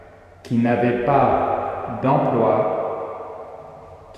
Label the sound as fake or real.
fake